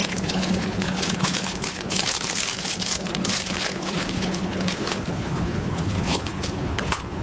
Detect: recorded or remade remade